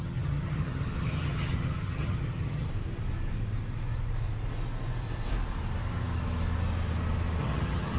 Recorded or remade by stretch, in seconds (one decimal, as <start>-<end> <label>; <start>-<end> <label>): 0.0-2.7 remade; 2.7-7.4 recorded; 7.4-8.0 remade